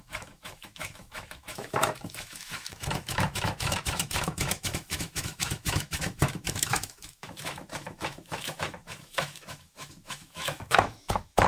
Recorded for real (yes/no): no